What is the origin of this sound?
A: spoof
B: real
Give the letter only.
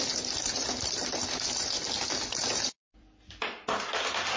A